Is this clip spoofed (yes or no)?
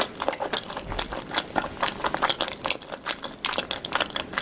no